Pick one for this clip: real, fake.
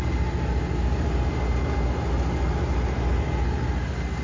real